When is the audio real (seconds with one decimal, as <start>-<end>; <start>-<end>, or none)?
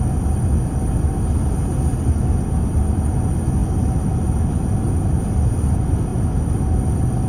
0.0-7.3